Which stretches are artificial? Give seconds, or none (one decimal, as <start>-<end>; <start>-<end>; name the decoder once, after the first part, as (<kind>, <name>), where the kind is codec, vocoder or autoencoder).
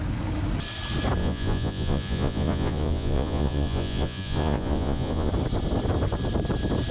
1.2-5.3 (vocoder, Vocos)